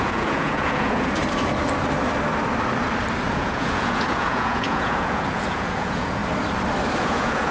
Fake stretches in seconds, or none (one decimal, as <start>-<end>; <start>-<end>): 0.0-1.2; 3.3-6.2; 7.0-7.5